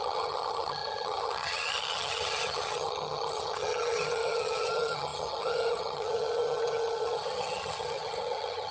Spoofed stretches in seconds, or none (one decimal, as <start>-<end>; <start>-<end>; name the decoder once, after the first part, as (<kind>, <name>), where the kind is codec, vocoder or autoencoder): 0.0-8.7 (vocoder, HiFi-GAN)